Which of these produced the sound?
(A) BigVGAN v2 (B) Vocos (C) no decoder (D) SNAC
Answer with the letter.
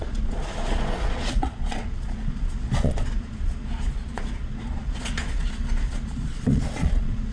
B